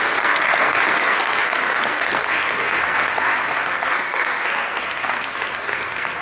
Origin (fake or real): fake